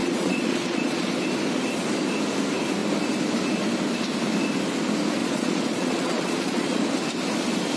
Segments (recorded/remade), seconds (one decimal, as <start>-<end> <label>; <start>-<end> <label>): 0.0-1.1 remade; 1.1-5.2 recorded; 5.2-6.8 remade; 6.8-7.8 recorded